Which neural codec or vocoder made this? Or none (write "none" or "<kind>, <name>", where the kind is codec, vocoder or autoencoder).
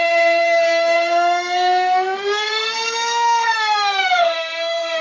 codec, SNAC